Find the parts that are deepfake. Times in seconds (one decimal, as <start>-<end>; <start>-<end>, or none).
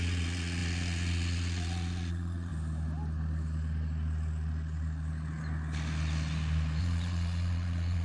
0.0-2.5; 6.8-8.0